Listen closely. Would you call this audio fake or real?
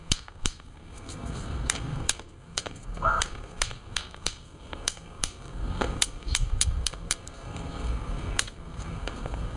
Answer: fake